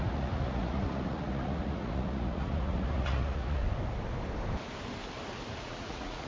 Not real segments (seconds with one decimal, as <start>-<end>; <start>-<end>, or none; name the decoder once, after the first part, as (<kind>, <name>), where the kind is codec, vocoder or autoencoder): 0.0-3.6 (vocoder, Vocos); 5.6-6.3